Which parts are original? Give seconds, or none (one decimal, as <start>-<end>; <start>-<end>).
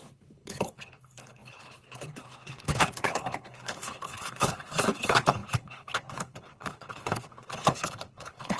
none